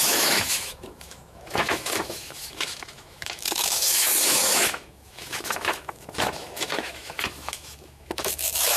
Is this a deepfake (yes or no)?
yes